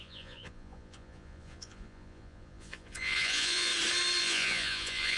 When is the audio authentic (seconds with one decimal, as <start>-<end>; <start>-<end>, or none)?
3.7-4.2